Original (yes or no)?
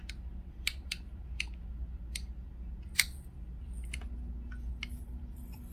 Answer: yes